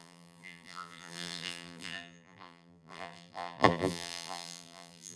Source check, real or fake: fake